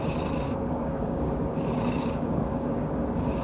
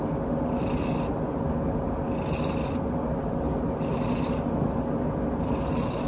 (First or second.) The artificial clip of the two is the first